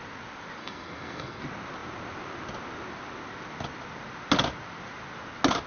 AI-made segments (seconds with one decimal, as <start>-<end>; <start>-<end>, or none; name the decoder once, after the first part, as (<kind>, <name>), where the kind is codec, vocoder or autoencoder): 0.6-1.4 (codec, SNAC)